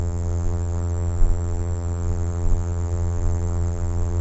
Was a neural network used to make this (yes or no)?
yes